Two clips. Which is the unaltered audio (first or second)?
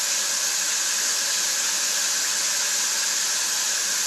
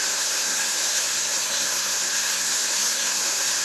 first